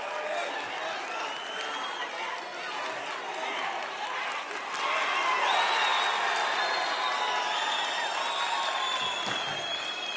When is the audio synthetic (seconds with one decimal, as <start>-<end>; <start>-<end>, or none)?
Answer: none